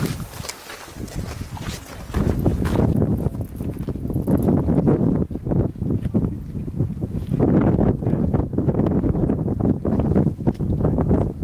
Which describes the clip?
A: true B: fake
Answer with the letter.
A